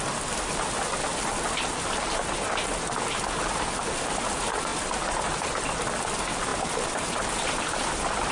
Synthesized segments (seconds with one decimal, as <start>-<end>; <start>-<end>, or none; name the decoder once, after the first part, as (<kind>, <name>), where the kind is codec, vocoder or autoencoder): 1.1-1.7 (vocoder, BigVGAN v2); 4.7-5.8; 6.5-8.3